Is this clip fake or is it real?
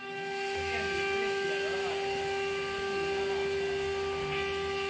real